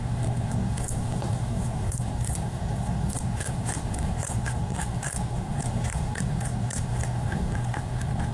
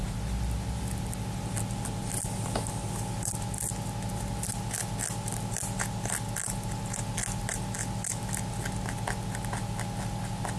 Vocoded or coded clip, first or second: first